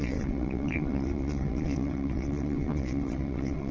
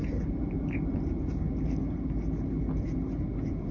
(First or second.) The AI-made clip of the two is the first